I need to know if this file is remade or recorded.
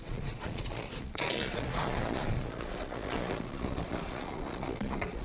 remade